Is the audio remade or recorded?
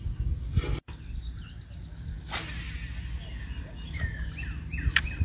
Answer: recorded